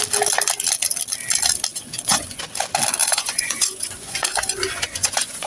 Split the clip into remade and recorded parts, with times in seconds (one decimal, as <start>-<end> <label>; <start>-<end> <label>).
0.0-1.7 recorded; 1.7-2.4 remade; 2.4-3.0 recorded; 3.0-5.5 remade